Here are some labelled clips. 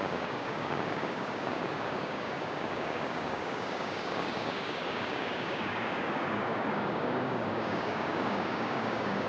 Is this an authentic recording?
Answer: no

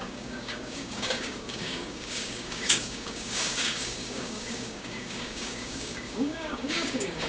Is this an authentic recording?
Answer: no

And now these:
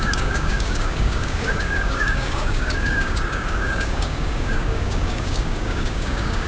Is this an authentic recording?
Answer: no